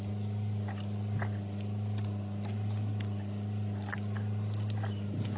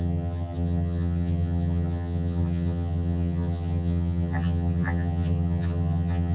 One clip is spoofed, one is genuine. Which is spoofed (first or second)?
second